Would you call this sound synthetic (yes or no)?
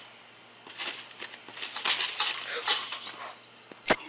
no